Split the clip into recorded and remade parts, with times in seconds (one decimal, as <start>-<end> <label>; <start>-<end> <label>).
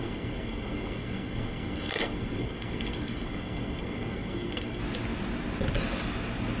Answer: 0.0-4.8 remade; 4.8-6.6 recorded